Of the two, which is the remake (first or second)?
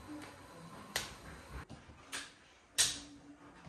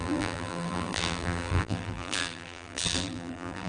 second